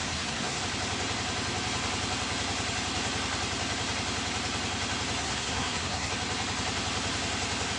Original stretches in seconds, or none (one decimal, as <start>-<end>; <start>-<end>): 0.6-5.2; 6.1-7.8